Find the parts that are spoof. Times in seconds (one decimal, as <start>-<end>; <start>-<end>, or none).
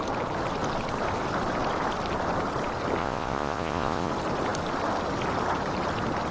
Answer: 3.0-4.1